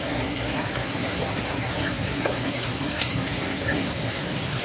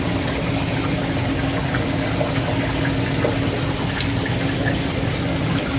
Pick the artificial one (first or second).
first